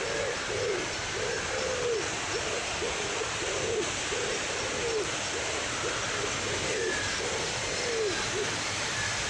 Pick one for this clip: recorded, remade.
recorded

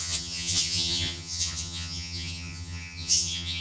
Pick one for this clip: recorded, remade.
remade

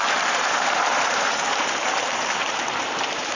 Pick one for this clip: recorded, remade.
remade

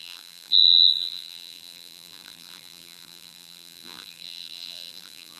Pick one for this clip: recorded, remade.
remade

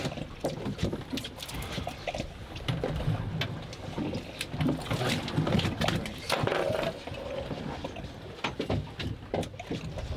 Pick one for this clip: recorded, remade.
recorded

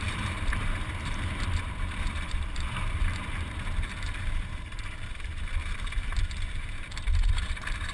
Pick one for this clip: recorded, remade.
remade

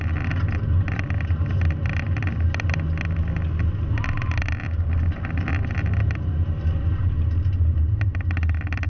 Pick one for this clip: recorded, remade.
recorded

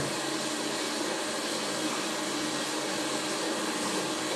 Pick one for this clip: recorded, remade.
recorded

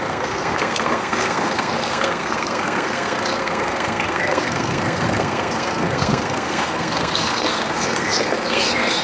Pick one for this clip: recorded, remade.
remade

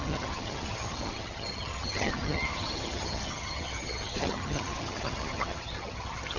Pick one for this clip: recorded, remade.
remade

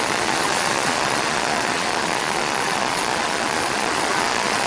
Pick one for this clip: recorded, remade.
remade